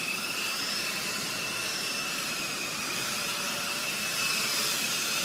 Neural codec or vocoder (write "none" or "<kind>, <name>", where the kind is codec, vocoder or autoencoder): vocoder, BigVGAN v2